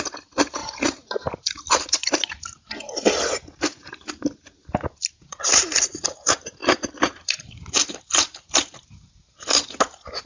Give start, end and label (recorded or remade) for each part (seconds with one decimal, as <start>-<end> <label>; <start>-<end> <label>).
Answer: 0.0-6.6 recorded; 6.6-8.9 remade; 8.9-10.3 recorded